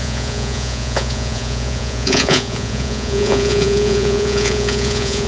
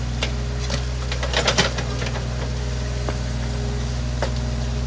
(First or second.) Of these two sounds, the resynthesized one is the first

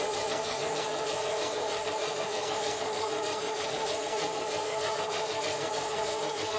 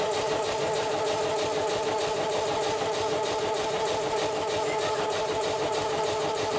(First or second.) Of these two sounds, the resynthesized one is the first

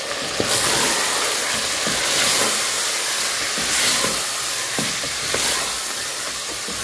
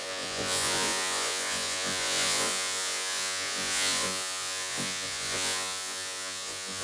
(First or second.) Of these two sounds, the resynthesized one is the second